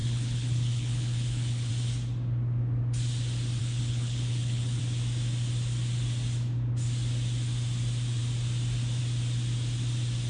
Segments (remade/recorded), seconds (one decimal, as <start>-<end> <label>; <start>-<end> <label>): 0.0-1.7 remade; 1.7-3.6 recorded; 3.6-4.8 remade; 4.8-10.3 recorded